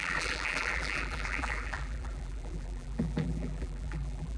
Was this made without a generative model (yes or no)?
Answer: no